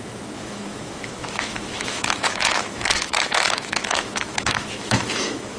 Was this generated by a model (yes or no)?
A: yes